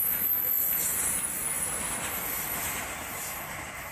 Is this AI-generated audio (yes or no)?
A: no